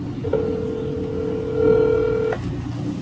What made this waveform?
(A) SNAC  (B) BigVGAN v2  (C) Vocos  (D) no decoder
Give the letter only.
D